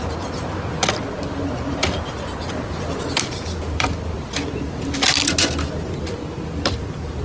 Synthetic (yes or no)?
yes